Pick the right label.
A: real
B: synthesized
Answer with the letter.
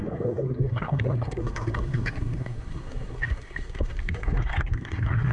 B